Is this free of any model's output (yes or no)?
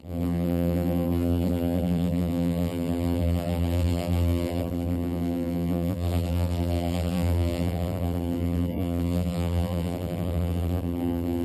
no